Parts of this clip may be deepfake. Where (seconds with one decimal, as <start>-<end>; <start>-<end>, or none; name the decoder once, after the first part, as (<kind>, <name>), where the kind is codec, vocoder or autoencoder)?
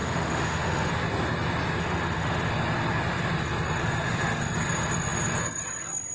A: 0.0-0.9 (autoencoder, DAC-VAE); 1.8-2.5; 3.8-4.4